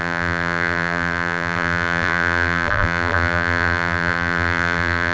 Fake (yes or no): yes